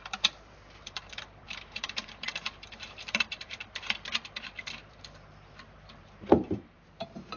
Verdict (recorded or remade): remade